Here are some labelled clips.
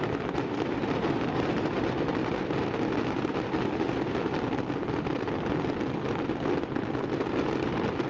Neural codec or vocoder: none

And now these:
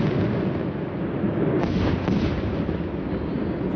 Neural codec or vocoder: none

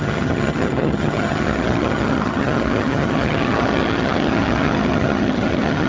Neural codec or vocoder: vocoder, HiFi-GAN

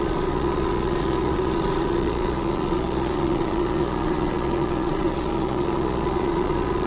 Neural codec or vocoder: vocoder, Vocos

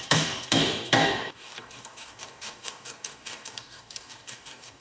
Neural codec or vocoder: codec, DAC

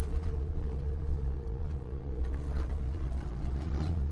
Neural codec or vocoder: vocoder, Vocos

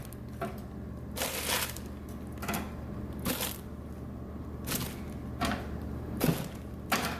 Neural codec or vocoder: none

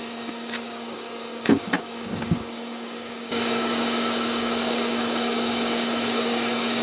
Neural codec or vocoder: codec, DAC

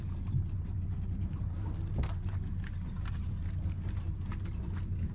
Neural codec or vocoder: none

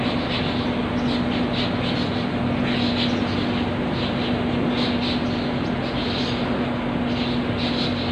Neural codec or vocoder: none